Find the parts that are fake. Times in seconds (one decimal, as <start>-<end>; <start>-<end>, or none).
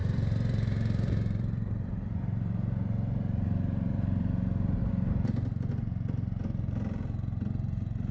0.0-4.9